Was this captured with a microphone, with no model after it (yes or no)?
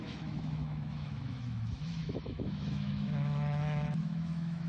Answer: no